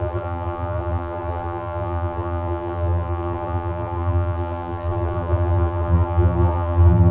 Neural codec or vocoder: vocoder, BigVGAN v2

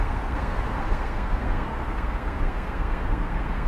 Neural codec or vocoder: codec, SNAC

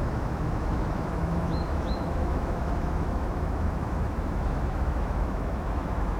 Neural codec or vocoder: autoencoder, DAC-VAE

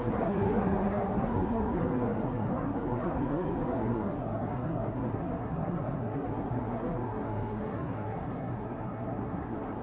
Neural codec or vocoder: codec, SNAC